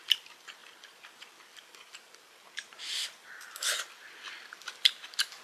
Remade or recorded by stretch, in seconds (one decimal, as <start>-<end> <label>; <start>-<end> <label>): 0.0-5.4 remade